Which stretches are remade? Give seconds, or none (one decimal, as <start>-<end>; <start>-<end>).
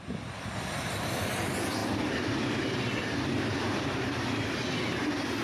1.8-5.0